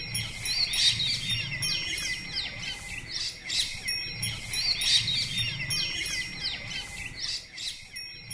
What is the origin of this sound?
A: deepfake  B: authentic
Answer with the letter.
B